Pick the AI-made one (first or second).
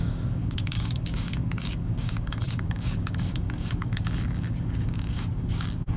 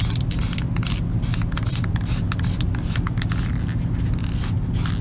first